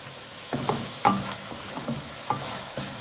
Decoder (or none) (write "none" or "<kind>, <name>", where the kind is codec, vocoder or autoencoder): autoencoder, DAC-VAE